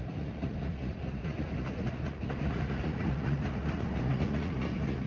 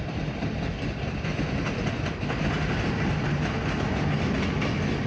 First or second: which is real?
second